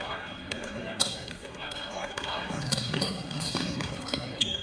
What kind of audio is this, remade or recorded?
remade